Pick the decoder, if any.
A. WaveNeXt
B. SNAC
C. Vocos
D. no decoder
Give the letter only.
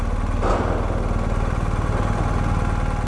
D